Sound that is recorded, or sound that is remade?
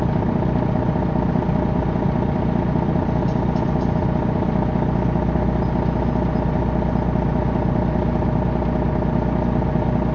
recorded